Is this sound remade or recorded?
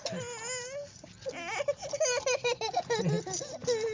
recorded